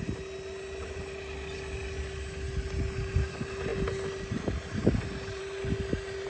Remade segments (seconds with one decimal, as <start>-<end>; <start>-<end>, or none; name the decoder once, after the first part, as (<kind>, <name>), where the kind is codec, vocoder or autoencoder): none